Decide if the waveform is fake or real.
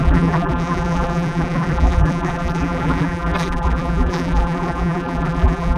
fake